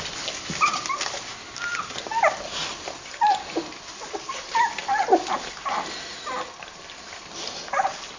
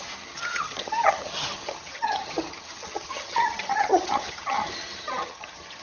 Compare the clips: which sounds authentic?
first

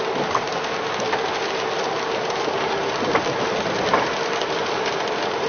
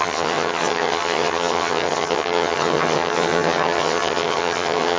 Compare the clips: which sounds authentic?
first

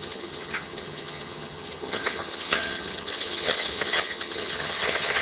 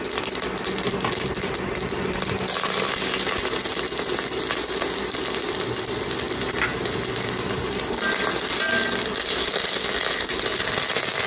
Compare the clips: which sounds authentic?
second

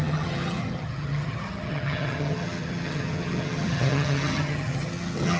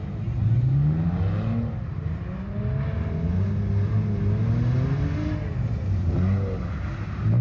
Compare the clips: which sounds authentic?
second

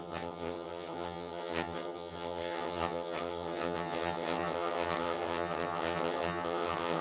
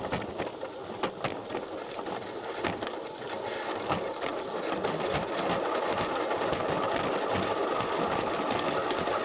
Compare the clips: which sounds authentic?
second